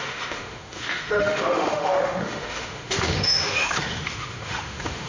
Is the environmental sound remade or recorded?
remade